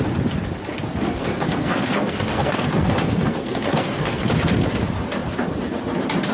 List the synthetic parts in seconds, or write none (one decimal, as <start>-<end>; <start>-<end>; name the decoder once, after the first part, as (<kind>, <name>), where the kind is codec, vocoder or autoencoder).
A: 1.1-4.3 (codec, SNAC)